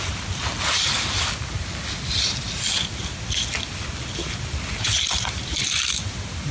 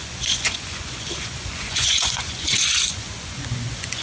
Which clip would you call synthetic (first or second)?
second